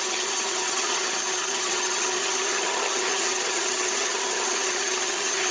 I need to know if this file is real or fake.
fake